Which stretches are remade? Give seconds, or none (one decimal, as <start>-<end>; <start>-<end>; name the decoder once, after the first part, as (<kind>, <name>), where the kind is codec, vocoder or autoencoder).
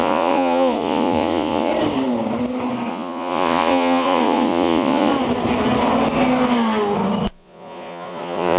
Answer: 0.0-1.7 (vocoder, Vocos); 2.9-5.1; 7.3-8.6